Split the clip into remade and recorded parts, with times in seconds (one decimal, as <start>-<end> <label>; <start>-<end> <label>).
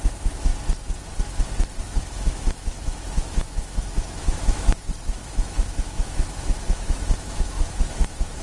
0.0-0.5 remade; 0.5-1.8 recorded; 1.8-8.4 remade